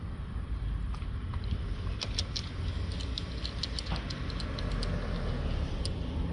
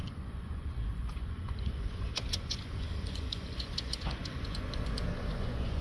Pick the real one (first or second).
first